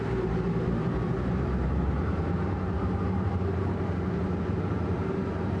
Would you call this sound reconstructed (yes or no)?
yes